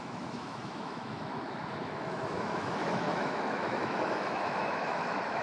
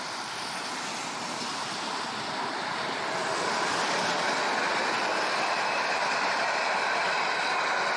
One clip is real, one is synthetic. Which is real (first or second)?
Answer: second